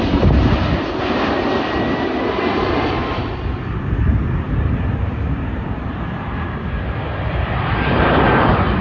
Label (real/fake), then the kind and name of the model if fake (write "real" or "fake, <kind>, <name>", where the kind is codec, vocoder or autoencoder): fake, vocoder, BigVGAN v2